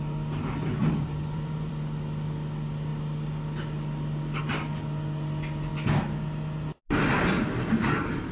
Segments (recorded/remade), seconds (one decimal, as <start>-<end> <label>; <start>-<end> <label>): 0.0-0.8 recorded; 0.8-1.7 remade; 1.7-8.3 recorded